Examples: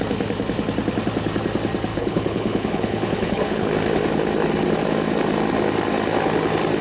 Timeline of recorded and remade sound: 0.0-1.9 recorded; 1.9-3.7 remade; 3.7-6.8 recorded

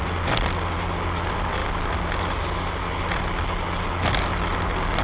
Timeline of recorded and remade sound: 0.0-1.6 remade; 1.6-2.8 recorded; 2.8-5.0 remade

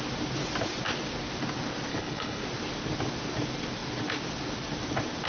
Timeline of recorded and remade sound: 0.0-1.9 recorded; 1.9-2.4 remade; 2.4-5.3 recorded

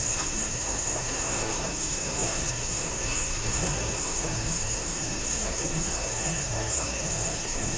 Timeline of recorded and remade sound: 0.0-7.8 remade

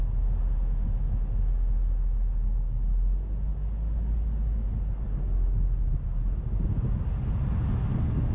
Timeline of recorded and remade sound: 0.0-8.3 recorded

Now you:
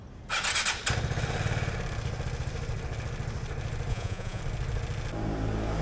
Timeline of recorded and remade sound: 0.0-3.9 recorded; 3.9-4.4 remade; 4.4-5.8 recorded

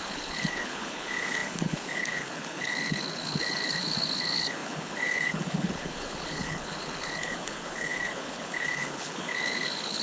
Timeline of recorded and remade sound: 0.0-10.0 remade

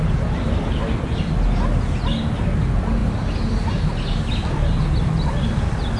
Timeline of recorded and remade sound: 0.0-6.0 recorded